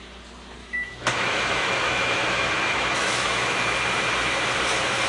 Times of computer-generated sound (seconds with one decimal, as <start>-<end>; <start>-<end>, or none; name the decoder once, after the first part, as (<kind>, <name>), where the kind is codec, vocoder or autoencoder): 0.6-3.7 (autoencoder, DAC-VAE)